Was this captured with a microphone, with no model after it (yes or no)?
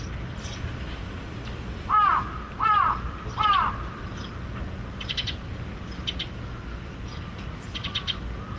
yes